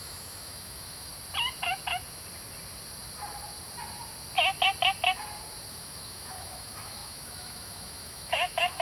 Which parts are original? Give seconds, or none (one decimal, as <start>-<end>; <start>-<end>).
1.1-5.7